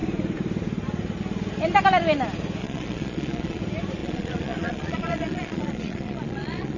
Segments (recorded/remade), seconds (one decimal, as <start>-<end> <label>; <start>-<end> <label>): 0.0-2.6 recorded; 2.6-3.6 remade; 3.6-4.0 recorded; 4.0-6.8 remade